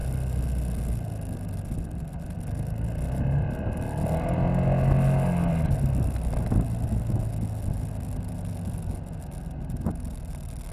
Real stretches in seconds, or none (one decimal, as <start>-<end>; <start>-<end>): 0.0-10.7